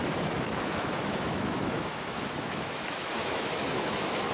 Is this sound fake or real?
fake